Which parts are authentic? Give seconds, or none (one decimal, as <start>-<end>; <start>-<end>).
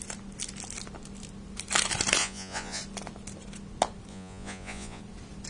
0.0-2.2; 2.8-4.1; 5.0-5.5